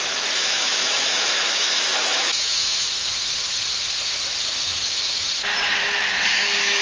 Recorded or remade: remade